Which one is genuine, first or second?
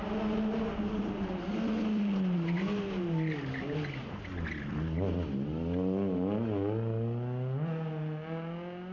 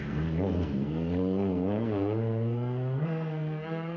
first